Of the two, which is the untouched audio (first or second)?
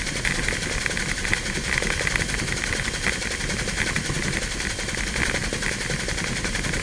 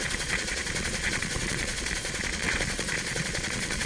first